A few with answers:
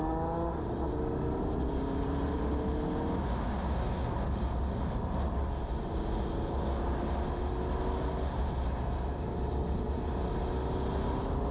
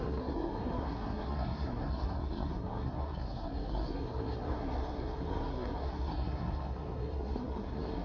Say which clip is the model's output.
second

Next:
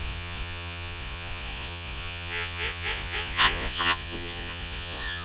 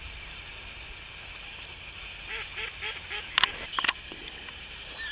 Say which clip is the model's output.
first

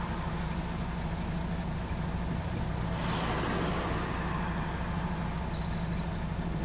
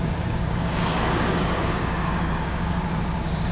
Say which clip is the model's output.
second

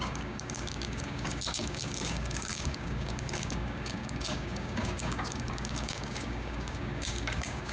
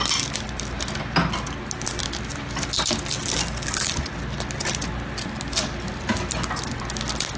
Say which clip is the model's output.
first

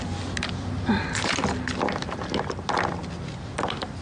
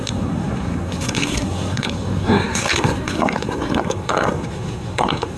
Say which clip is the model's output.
second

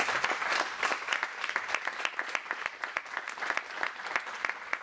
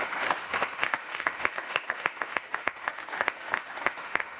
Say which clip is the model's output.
second